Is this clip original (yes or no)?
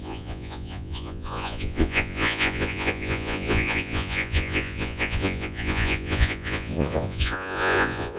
no